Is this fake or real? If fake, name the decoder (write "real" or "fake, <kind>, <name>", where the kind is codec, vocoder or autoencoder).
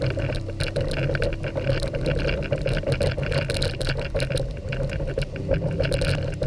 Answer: real